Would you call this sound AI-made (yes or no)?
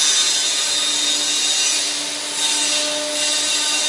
no